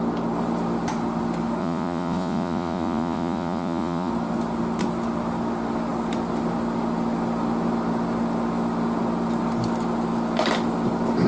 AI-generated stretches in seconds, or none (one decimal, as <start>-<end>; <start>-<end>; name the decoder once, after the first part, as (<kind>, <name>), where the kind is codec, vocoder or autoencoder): 1.6-4.1 (vocoder, Vocos)